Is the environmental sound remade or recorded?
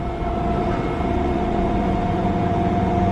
remade